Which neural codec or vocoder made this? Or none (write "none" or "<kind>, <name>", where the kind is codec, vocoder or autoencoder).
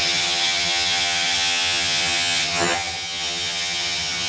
vocoder, HiFi-GAN